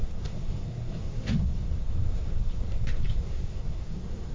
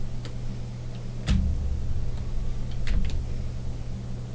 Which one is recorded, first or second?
second